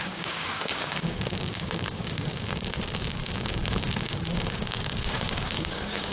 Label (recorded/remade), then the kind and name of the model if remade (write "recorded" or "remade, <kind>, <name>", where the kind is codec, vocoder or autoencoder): remade, codec, DAC